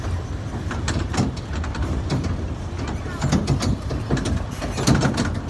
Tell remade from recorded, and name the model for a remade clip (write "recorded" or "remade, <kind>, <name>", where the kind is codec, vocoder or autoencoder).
recorded